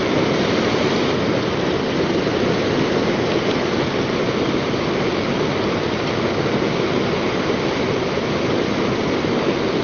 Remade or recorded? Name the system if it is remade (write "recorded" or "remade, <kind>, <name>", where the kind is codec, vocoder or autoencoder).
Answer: recorded